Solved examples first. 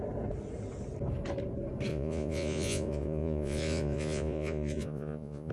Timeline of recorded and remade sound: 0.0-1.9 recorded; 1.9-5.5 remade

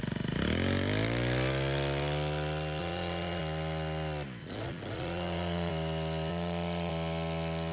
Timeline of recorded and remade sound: 0.0-2.8 recorded; 2.8-3.4 remade; 3.4-4.4 recorded; 4.4-5.7 remade; 5.7-6.3 recorded; 6.3-6.9 remade; 6.9-7.7 recorded

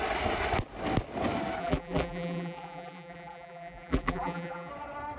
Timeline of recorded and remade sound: 0.0-1.6 recorded; 1.6-4.7 remade; 4.7-5.2 recorded

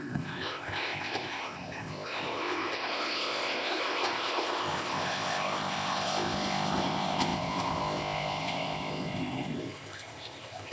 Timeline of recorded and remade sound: 0.0-10.7 remade

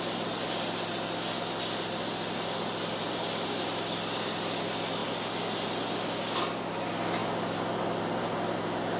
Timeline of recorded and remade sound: 0.0-9.0 recorded

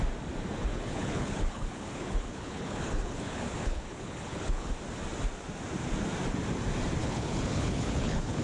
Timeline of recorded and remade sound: 0.0-0.7 recorded; 0.7-4.7 remade; 4.7-7.0 recorded; 7.0-8.4 remade

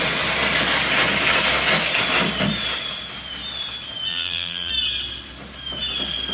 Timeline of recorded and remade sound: 0.0-4.1 recorded; 4.1-4.7 remade; 4.7-6.3 recorded